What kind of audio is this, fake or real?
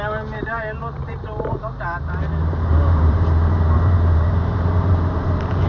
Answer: fake